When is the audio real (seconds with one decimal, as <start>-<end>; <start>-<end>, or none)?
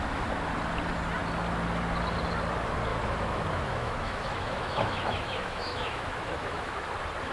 0.0-2.9; 6.8-7.3